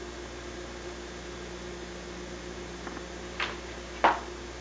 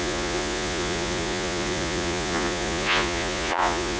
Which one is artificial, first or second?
second